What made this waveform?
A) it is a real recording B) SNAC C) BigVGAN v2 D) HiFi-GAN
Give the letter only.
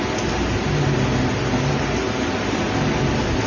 A